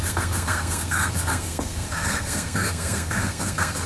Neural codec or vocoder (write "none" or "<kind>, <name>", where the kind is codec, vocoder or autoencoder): codec, SNAC